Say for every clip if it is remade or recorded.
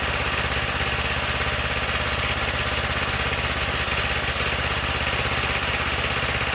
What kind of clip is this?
recorded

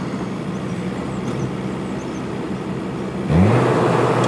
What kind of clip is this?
recorded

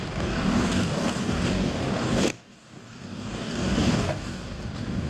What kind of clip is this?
remade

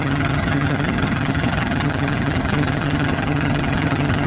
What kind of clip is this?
remade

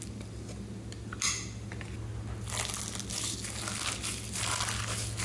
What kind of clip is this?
recorded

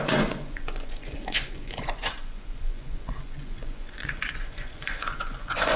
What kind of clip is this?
remade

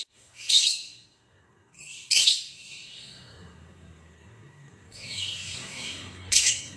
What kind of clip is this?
remade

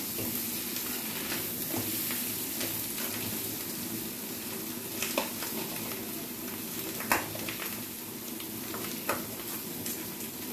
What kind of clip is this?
recorded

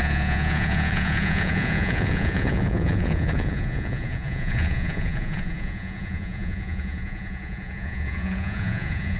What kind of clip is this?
remade